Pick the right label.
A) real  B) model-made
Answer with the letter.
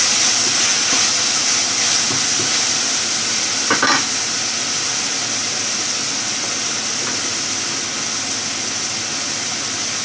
A